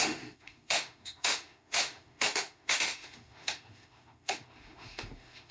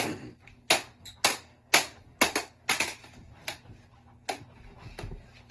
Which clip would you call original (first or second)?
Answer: second